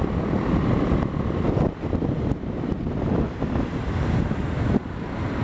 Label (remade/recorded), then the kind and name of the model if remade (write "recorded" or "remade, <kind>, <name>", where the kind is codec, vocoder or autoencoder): recorded